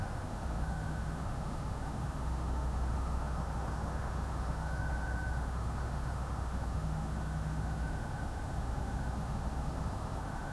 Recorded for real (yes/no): no